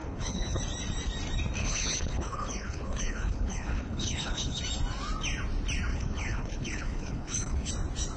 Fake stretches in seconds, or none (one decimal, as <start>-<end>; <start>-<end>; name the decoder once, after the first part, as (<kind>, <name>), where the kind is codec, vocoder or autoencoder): 0.0-0.6 (codec, HILCodec); 1.6-4.6; 5.9-7.7